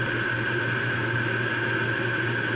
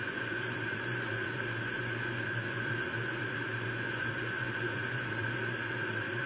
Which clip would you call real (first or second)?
first